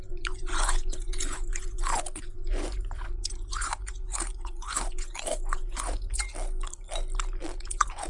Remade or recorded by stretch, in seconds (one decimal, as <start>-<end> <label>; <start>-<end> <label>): 0.0-6.3 remade; 6.3-7.6 recorded; 7.6-8.1 remade